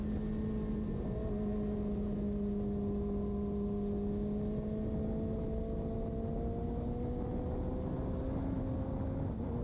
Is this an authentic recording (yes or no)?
yes